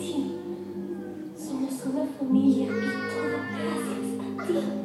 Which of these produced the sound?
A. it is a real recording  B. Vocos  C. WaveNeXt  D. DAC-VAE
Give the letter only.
A